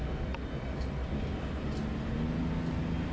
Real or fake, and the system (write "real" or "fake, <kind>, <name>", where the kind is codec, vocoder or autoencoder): real